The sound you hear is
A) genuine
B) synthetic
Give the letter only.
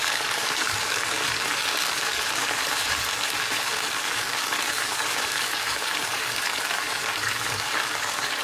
B